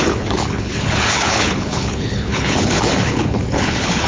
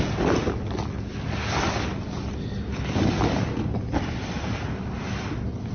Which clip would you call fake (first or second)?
first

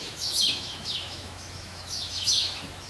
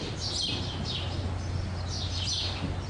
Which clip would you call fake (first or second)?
first